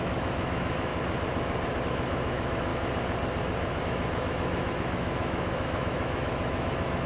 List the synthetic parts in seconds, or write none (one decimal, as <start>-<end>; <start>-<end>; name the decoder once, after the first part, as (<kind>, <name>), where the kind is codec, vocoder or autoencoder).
0.0-0.9 (autoencoder, DAC-VAE); 1.8-2.7; 3.8-7.1